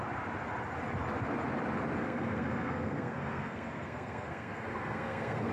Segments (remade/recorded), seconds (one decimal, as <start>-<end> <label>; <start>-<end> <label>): 0.0-2.0 recorded; 2.0-5.5 remade